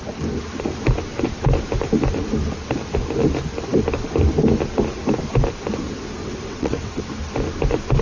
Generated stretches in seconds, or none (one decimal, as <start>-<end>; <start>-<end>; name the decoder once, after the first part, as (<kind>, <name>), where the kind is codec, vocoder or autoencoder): 6.2-7.0 (vocoder, WaveNeXt)